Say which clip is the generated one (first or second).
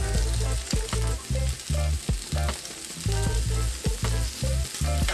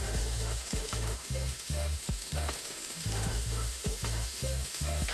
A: second